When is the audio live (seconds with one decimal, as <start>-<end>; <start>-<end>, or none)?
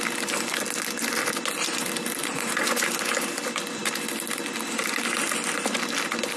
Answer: 0.0-2.2; 2.9-6.4